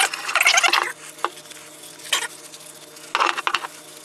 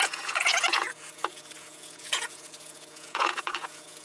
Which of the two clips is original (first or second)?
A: first